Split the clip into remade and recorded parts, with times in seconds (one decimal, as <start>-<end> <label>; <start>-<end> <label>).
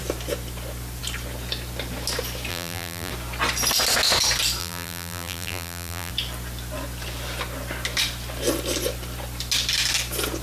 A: 0.0-2.5 recorded; 2.5-3.1 remade; 3.1-4.6 recorded; 4.6-6.1 remade; 6.1-10.4 recorded